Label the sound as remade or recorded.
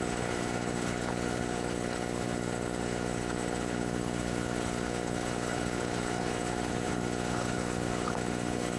remade